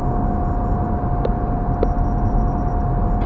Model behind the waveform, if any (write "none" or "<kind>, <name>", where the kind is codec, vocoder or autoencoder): none